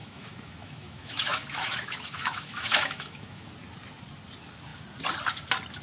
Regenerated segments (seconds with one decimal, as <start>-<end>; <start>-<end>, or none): 0.0-3.5